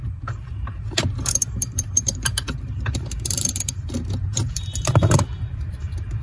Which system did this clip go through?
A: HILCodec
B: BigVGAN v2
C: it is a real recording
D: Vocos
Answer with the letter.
B